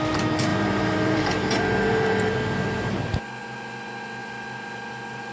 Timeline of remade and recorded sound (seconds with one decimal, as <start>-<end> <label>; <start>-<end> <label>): 0.0-0.5 recorded; 0.5-2.9 remade; 2.9-5.3 recorded